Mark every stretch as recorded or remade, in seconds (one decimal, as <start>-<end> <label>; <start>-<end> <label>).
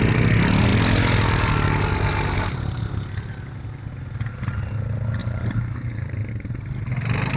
0.0-5.2 recorded; 5.2-6.3 remade; 6.3-7.4 recorded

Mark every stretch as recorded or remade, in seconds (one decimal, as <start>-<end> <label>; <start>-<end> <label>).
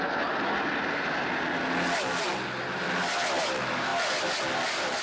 0.0-5.0 recorded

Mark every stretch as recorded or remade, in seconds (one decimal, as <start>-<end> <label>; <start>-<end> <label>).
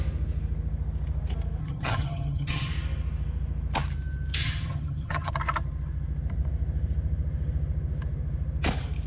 0.0-1.6 recorded; 1.6-2.7 remade; 2.7-4.4 recorded; 4.4-5.3 remade; 5.3-9.1 recorded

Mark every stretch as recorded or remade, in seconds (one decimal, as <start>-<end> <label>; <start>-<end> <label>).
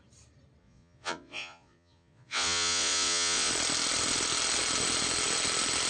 0.0-0.6 recorded; 0.6-3.5 remade; 3.5-5.9 recorded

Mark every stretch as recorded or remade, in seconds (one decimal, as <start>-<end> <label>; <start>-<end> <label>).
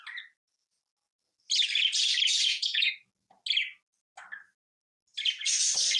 0.0-2.3 recorded; 2.3-2.9 remade; 2.9-6.0 recorded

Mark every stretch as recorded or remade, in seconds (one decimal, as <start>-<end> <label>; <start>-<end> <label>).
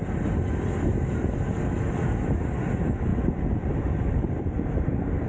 0.0-5.3 recorded